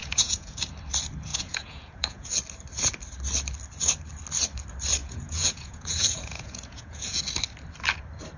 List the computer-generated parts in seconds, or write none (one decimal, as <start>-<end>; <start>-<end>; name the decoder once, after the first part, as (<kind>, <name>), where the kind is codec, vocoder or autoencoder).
0.0-0.6 (vocoder, Vocos); 1.3-2.3; 5.0-7.2